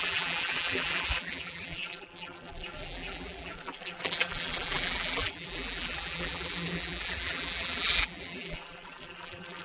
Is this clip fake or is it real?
fake